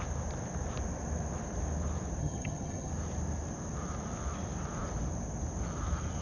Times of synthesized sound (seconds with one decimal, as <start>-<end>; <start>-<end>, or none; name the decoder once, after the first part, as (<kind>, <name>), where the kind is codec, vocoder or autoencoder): 2.2-2.9 (vocoder, HiFi-GAN)